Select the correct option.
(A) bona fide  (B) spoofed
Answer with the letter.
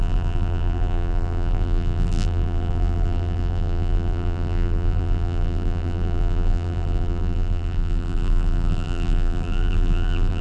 B